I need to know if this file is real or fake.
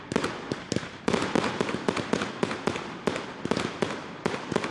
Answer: real